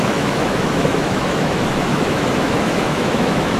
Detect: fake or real fake